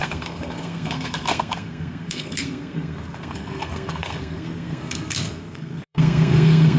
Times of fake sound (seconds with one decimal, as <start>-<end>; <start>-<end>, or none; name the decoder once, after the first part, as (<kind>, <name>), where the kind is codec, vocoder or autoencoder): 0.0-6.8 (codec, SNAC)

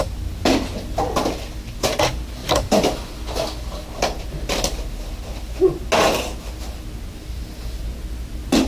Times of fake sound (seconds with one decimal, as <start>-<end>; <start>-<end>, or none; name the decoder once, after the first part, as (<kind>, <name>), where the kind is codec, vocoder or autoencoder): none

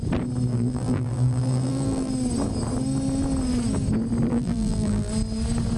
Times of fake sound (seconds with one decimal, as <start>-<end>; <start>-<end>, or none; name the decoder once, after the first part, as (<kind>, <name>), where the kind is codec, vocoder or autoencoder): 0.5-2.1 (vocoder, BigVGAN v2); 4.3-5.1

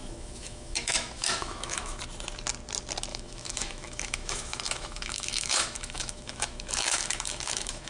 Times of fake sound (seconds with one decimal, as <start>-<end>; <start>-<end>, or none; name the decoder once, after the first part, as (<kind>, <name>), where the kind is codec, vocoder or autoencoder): 0.0-2.0 (autoencoder, DAC-VAE); 3.1-7.9

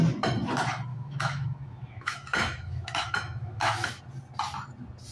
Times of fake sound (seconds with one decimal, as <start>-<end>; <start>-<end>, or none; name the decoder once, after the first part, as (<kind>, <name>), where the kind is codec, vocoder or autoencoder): 0.9-4.0 (autoencoder, DAC-VAE)

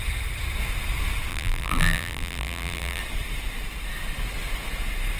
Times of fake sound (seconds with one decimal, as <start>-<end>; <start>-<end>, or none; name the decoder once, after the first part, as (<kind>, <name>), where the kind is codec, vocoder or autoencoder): 1.3-3.0 (vocoder, BigVGAN v2)

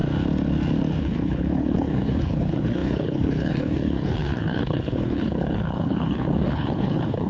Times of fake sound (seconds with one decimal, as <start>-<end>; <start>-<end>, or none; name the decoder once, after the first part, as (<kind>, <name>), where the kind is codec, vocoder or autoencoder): 1.0-7.3 (codec, HILCodec)